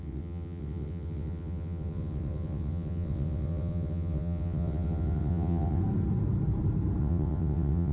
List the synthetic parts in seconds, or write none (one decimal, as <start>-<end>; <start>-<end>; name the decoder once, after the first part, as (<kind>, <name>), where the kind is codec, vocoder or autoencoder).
0.0-5.8 (vocoder, WaveNeXt); 7.0-7.9